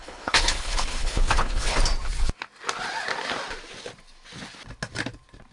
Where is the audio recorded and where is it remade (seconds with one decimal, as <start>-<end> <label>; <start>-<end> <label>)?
0.0-1.8 remade; 1.8-5.5 recorded